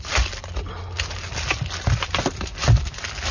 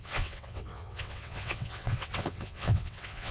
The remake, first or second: second